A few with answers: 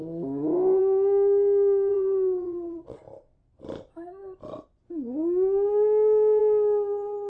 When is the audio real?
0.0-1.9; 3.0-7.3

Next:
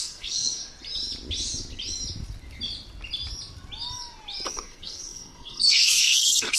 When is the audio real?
0.6-4.5

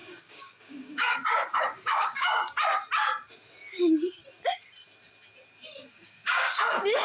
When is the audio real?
2.4-5.9

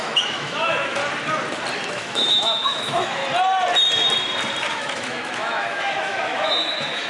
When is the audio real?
1.0-1.9; 3.2-4.6

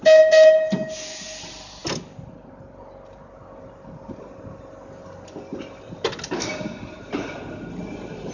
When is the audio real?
0.0-8.3

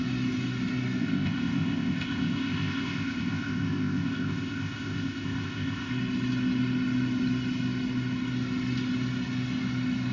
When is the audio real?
0.0-1.0; 5.9-10.1

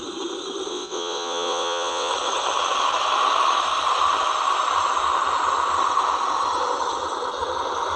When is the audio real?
0.0-0.7; 2.1-8.0

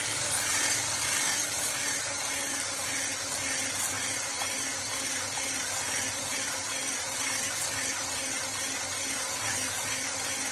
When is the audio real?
0.0-6.8; 7.6-10.5